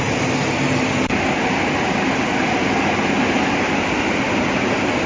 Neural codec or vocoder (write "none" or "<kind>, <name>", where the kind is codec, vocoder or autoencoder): none